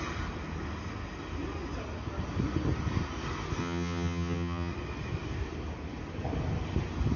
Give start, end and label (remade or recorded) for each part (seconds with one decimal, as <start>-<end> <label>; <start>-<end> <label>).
0.0-3.6 recorded; 3.6-4.7 remade; 4.7-7.2 recorded